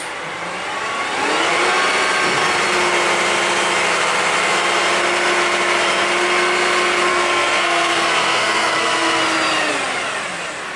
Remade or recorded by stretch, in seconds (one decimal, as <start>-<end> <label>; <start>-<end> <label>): 0.0-7.1 recorded; 7.1-9.2 remade; 9.2-10.8 recorded